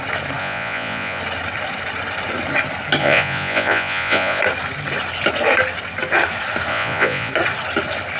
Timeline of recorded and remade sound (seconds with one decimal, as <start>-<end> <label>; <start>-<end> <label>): 0.0-0.4 recorded; 0.4-1.2 remade; 1.2-3.0 recorded; 3.0-4.4 remade; 4.4-6.7 recorded; 6.7-7.3 remade; 7.3-8.2 recorded